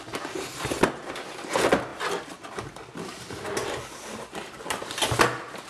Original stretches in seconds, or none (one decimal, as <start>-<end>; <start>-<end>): 0.0-5.7

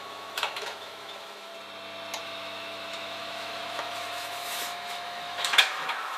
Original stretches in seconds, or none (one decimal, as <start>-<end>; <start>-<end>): 1.5-2.2

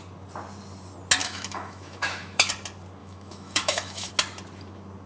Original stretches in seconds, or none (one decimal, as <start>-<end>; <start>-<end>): 0.0-1.2; 2.5-3.0; 4.1-5.1